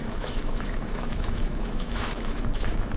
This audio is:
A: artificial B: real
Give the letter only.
A